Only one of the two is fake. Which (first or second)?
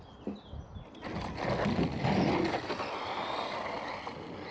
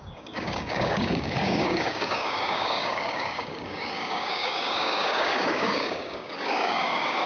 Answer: second